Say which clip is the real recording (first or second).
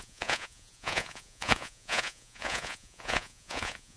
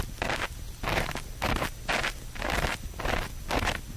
second